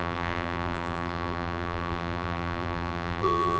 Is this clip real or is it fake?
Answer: fake